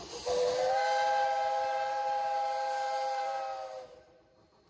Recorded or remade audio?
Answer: recorded